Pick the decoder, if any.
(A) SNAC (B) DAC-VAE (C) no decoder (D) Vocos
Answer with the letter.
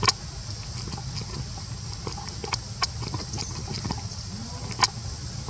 C